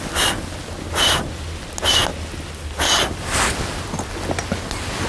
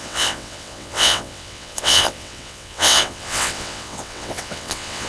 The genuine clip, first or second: first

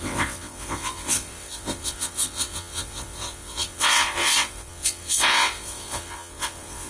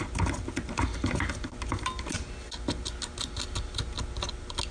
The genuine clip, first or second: second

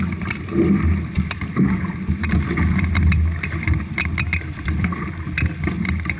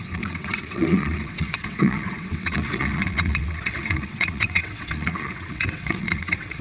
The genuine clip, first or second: first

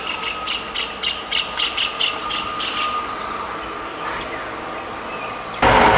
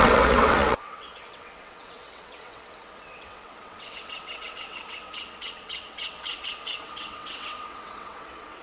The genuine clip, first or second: first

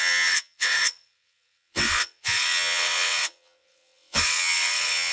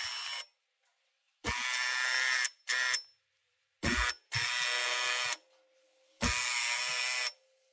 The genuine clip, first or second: second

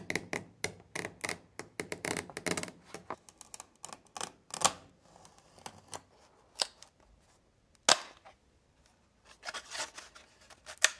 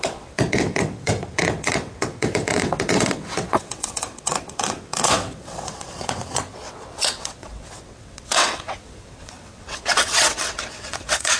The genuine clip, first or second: first